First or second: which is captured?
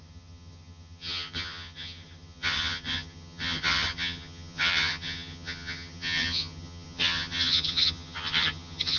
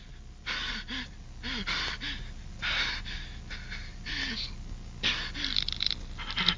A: second